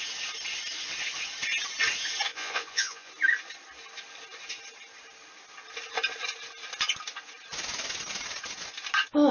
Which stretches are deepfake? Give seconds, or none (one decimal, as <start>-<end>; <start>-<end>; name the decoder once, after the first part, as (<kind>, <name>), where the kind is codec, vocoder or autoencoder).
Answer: 2.3-3.1 (vocoder, Vocos)